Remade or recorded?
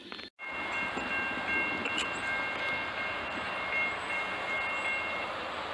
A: recorded